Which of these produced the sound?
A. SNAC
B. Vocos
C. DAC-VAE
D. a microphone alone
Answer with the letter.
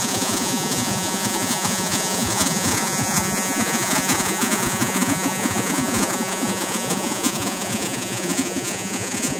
B